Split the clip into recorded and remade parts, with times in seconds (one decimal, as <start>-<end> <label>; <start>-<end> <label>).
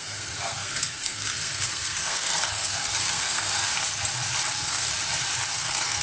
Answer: 0.0-3.7 remade; 3.7-4.5 recorded; 4.5-4.9 remade; 4.9-5.5 recorded; 5.5-6.0 remade